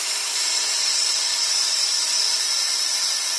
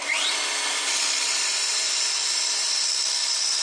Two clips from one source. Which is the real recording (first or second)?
second